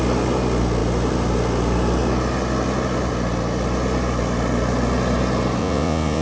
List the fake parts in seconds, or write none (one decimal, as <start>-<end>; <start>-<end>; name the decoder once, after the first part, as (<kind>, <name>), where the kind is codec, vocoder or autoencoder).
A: 5.6-6.2 (vocoder, Vocos)